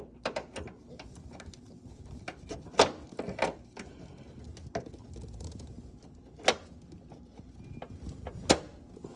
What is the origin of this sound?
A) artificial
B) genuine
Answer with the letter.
B